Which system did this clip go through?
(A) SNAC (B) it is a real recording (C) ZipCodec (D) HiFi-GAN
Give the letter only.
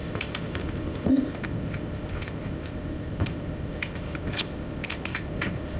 C